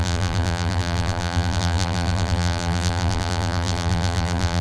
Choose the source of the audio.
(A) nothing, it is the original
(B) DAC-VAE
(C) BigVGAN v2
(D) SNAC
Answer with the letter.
C